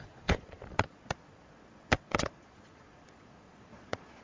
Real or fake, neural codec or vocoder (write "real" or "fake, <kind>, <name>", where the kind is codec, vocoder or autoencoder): fake, vocoder, Vocos